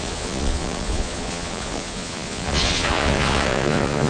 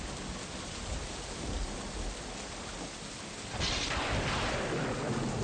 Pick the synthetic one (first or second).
first